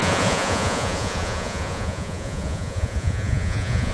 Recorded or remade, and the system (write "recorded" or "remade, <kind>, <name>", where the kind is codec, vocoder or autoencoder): remade, vocoder, Vocos